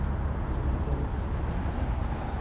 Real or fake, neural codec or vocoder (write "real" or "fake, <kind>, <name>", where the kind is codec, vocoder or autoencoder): real